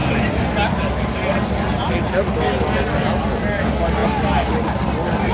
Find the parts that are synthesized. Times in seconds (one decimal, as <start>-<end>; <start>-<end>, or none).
none